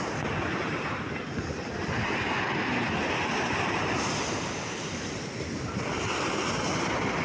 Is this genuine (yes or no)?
yes